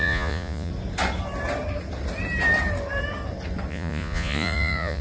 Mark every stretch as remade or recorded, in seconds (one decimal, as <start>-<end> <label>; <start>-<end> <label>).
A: 0.0-0.7 remade; 0.7-3.7 recorded; 3.7-5.0 remade